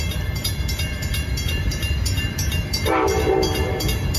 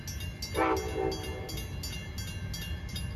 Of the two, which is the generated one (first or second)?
first